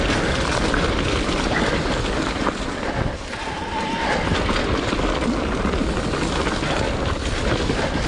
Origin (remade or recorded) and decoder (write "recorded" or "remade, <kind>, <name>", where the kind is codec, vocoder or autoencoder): recorded